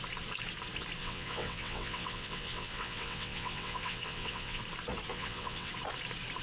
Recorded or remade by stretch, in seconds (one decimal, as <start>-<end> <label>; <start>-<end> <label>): 0.0-1.0 recorded; 1.0-4.6 remade; 4.6-5.1 recorded; 5.1-5.7 remade; 5.7-6.4 recorded